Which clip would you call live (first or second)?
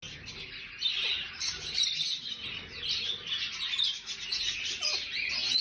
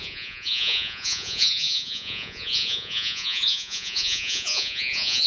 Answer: first